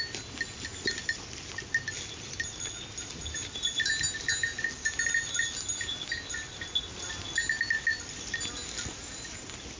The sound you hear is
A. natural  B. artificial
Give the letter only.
A